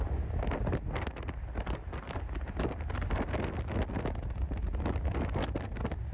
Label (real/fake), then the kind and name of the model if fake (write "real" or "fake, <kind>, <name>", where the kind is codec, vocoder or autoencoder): real